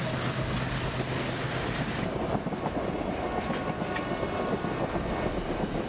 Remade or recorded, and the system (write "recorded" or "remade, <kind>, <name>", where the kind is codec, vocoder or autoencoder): recorded